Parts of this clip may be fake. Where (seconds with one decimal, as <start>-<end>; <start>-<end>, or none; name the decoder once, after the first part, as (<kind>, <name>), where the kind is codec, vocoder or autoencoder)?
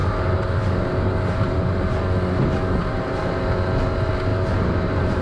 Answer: 0.0-2.0 (vocoder, BigVGAN v2); 2.8-3.4; 4.3-5.2